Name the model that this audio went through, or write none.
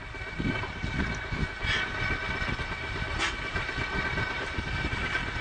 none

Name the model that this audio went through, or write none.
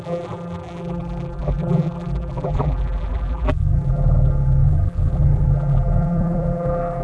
vocoder, BigVGAN v2